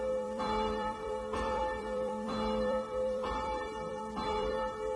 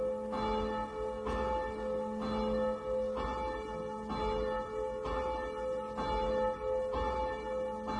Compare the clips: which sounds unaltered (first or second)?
second